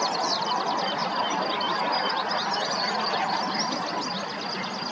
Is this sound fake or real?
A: real